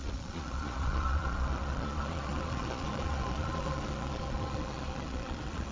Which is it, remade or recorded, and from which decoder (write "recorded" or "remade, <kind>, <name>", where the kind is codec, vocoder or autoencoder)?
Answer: remade, vocoder, Vocos